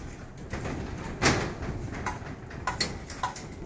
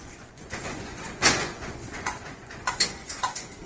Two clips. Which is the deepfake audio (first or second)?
second